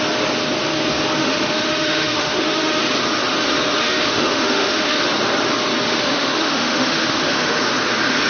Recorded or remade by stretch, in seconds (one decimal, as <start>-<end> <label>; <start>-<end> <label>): 0.0-1.2 recorded; 1.2-2.8 remade; 2.8-3.8 recorded; 3.8-5.0 remade; 5.0-5.9 recorded; 5.9-7.6 remade; 7.6-8.3 recorded